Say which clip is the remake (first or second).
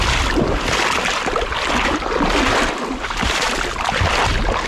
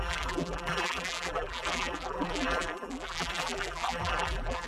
second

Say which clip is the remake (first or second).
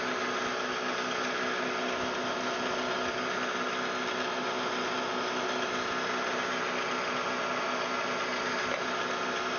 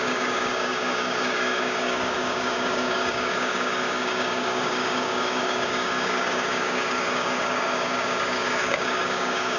second